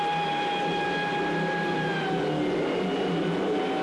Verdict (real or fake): real